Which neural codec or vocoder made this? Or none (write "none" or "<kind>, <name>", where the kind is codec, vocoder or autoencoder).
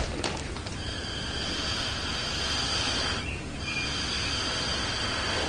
none